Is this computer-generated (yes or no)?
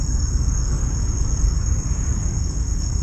yes